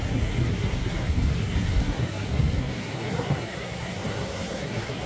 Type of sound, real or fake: fake